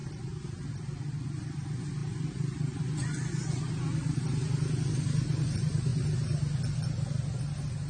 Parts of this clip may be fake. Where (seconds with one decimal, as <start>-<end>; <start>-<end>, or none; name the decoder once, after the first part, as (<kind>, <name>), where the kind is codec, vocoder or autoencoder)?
0.0-0.7 (vocoder, BigVGAN v2); 2.0-2.8